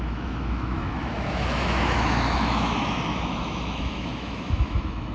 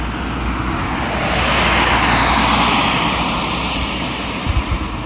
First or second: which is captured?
second